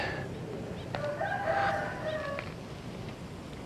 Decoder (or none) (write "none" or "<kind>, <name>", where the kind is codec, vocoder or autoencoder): none